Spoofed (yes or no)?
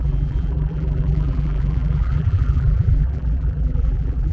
yes